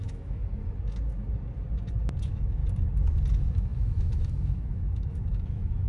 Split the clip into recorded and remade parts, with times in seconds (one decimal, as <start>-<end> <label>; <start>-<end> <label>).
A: 0.0-0.4 remade; 0.4-2.2 recorded; 2.2-2.6 remade; 2.6-3.3 recorded; 3.3-5.9 remade